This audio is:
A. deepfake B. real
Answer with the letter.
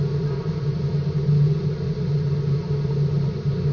B